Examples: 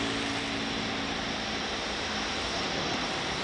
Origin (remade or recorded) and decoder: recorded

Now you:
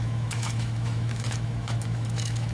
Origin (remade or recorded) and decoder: remade, autoencoder, DAC-VAE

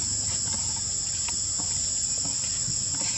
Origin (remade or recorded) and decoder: recorded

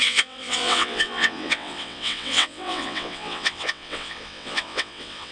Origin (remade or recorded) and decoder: remade, vocoder, WaveNeXt